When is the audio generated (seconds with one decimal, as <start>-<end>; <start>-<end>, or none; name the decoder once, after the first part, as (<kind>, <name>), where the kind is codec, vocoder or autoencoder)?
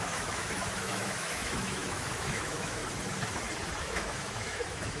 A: 0.0-2.8 (autoencoder, DAC-VAE); 3.8-5.0